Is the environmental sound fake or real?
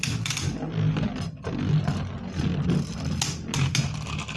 real